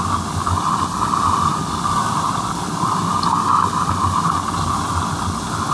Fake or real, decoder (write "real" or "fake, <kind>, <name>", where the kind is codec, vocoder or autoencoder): real